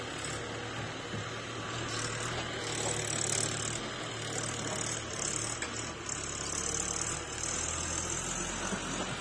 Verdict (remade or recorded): recorded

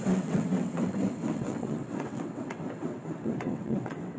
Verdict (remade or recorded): remade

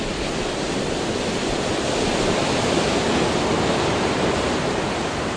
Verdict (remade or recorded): recorded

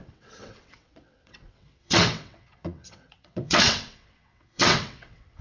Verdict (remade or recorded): remade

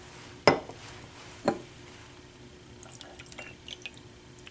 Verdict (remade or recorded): recorded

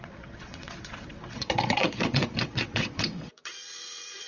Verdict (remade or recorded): remade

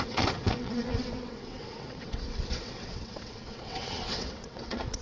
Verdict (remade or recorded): remade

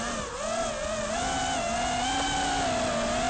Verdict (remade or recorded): recorded